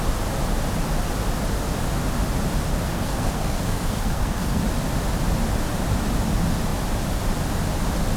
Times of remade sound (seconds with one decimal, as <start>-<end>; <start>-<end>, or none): 2.7-4.6